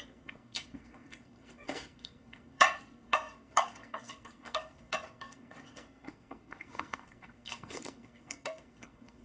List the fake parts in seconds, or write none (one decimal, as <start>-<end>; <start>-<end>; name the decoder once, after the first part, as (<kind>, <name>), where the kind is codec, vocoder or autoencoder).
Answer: 0.0-9.2 (codec, SNAC)